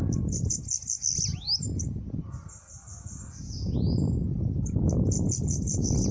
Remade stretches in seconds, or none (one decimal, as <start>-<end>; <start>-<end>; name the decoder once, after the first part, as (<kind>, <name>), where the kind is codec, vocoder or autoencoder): none